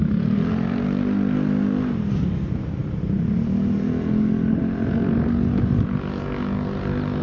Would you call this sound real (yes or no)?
yes